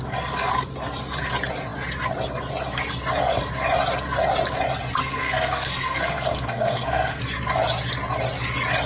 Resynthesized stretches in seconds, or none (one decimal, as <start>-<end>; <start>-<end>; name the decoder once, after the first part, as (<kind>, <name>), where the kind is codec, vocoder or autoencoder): 5.0-7.2 (codec, SNAC)